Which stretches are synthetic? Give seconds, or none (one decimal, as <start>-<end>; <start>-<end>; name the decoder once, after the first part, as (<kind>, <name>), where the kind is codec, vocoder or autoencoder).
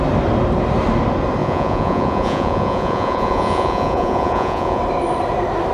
1.4-4.8 (vocoder, Vocos)